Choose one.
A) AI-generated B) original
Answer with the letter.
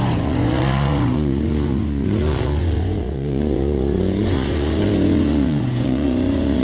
A